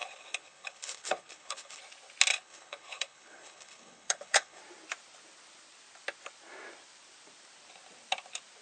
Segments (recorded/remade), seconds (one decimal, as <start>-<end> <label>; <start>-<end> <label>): 0.0-1.8 remade; 1.8-2.3 recorded; 2.3-4.6 remade; 4.6-8.6 recorded